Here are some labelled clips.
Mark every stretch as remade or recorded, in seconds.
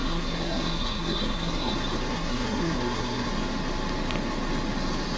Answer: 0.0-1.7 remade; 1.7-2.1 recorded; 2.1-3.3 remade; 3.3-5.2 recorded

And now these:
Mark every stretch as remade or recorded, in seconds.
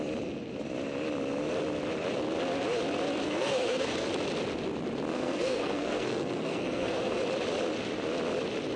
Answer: 0.0-3.2 recorded; 3.2-4.1 remade; 4.1-5.1 recorded; 5.1-7.2 remade; 7.2-8.8 recorded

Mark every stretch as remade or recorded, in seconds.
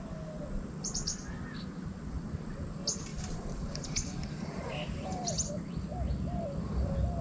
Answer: 0.0-3.1 recorded; 3.1-5.5 remade; 5.5-7.2 recorded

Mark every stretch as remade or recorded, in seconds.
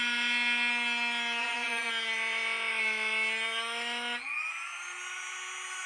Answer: 0.0-1.4 recorded; 1.4-1.9 remade; 1.9-5.9 recorded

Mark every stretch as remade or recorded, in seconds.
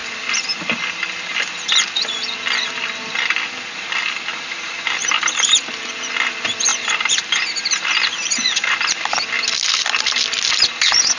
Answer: 0.0-0.6 remade; 0.6-4.3 recorded; 4.3-5.5 remade; 5.5-6.7 recorded; 6.7-9.3 remade; 9.3-11.2 recorded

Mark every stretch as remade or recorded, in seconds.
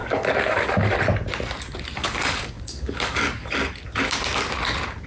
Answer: 0.0-1.0 remade; 1.0-2.0 recorded; 2.0-3.5 remade; 3.5-5.1 recorded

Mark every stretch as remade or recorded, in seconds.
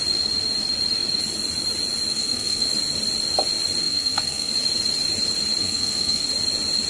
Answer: 0.0-2.1 recorded; 2.1-2.7 remade; 2.7-3.8 recorded; 3.8-4.5 remade; 4.5-5.6 recorded; 5.6-6.2 remade; 6.2-6.9 recorded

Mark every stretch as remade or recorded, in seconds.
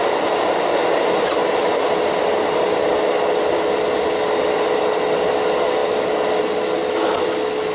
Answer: 0.0-7.7 recorded